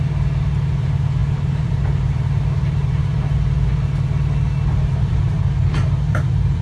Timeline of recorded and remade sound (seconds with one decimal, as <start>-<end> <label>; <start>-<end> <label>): 0.0-3.7 remade; 3.7-4.9 recorded; 4.9-6.6 remade